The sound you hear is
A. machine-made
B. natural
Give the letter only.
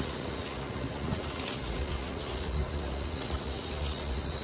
A